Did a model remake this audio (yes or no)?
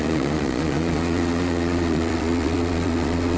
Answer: yes